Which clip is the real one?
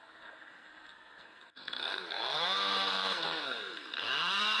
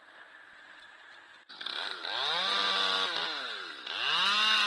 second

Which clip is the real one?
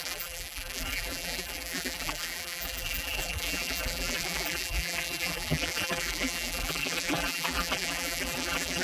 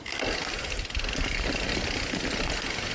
second